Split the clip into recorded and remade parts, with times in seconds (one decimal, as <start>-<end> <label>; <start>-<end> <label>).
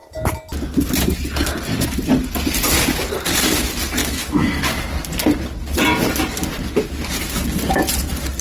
0.0-4.0 recorded; 4.0-4.8 remade; 4.8-8.4 recorded